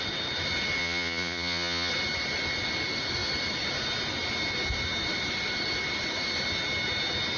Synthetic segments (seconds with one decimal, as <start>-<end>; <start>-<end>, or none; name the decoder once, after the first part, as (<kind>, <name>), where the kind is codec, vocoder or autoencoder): 0.8-1.9 (vocoder, Vocos)